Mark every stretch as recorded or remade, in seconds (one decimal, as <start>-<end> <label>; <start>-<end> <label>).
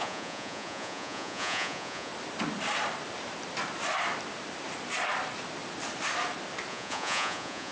0.0-2.1 remade; 2.1-6.7 recorded; 6.7-7.7 remade